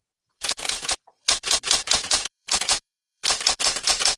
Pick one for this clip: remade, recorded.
remade